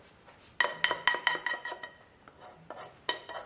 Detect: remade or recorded recorded